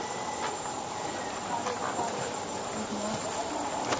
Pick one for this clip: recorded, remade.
recorded